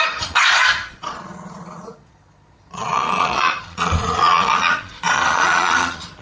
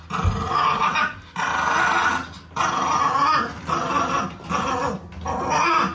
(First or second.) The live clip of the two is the second